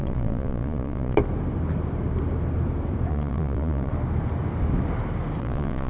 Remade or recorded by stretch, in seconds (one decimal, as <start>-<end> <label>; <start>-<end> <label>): 0.0-1.2 remade; 1.2-3.1 recorded; 3.1-3.9 remade; 3.9-5.4 recorded; 5.4-5.9 remade